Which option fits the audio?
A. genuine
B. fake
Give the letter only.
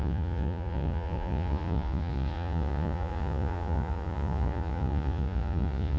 B